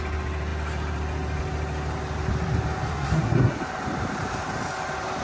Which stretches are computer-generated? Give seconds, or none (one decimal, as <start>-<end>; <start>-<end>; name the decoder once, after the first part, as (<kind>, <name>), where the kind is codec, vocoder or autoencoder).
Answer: 2.9-3.6 (codec, SNAC)